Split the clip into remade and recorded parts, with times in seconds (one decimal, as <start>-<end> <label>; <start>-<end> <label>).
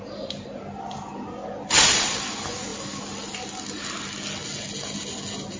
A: 0.0-5.6 recorded